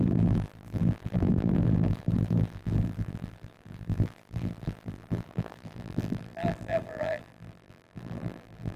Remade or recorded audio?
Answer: remade